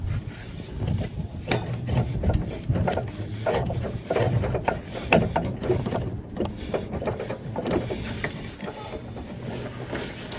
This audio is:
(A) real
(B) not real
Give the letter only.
B